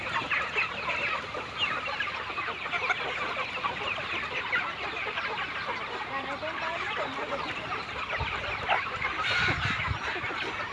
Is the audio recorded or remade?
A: recorded